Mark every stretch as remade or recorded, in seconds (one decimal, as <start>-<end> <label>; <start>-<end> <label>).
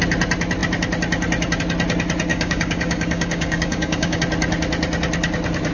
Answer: 0.0-2.3 recorded; 2.3-4.2 remade; 4.2-5.7 recorded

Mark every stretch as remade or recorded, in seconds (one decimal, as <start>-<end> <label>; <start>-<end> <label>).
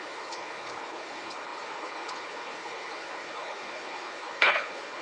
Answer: 0.0-5.0 remade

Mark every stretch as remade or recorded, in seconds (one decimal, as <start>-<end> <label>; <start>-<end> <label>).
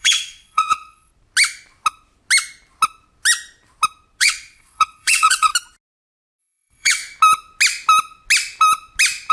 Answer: 0.0-1.1 remade; 1.1-4.2 recorded; 4.2-5.5 remade; 5.5-6.4 recorded; 6.4-7.0 remade; 7.0-9.3 recorded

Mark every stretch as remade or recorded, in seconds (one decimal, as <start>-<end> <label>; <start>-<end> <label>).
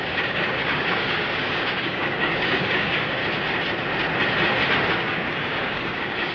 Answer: 0.0-3.2 remade; 3.2-4.9 recorded; 4.9-6.3 remade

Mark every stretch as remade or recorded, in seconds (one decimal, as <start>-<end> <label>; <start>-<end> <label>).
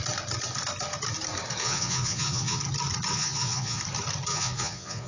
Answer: 0.0-1.6 recorded; 1.6-2.6 remade; 2.6-3.1 recorded; 3.1-3.8 remade; 3.8-4.3 recorded; 4.3-5.1 remade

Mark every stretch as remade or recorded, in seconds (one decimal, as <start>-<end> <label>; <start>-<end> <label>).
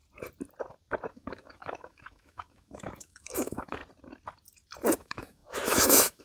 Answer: 0.0-1.1 recorded; 1.1-3.8 remade; 3.8-5.0 recorded; 5.0-6.2 remade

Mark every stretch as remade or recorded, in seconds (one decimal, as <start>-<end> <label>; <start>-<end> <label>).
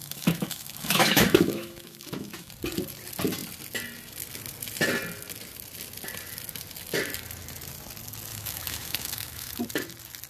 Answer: 0.0-2.5 remade; 2.5-8.3 recorded; 8.3-9.6 remade; 9.6-10.3 recorded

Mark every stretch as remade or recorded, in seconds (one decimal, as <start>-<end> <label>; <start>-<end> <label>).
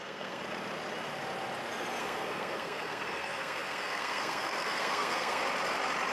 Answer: 0.0-0.4 remade; 0.4-2.0 recorded; 2.0-5.4 remade; 5.4-6.1 recorded